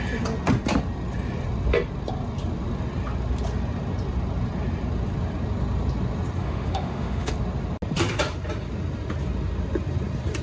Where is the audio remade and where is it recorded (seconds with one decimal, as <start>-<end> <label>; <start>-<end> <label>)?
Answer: 0.0-6.4 recorded; 6.4-7.3 remade; 7.3-10.4 recorded